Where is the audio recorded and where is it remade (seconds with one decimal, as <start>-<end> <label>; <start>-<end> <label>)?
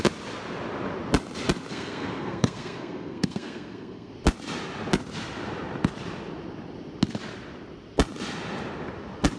0.0-1.7 recorded; 1.7-4.1 remade; 4.1-9.4 recorded